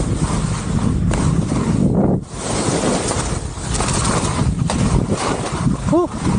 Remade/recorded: recorded